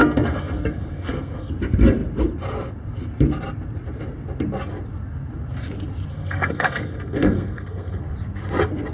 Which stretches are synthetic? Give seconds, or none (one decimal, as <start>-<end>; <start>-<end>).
0.0-1.5; 6.1-8.0